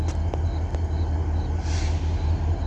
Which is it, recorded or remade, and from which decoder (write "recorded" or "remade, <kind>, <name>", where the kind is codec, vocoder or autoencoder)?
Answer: recorded